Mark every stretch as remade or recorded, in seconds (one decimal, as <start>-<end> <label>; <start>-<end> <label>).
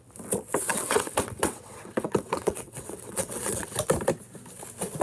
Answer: 0.0-0.7 recorded; 0.7-3.7 remade; 3.7-5.0 recorded